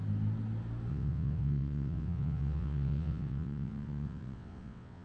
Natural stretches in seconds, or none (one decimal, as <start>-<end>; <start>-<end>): 0.0-0.9